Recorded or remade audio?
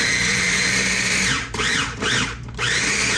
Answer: remade